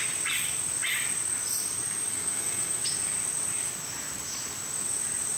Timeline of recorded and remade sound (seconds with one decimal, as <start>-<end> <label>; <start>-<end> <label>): 0.0-2.1 recorded; 2.1-2.8 remade; 2.8-5.4 recorded